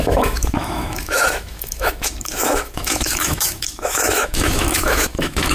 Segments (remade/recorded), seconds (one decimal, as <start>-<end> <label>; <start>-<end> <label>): 0.0-5.5 remade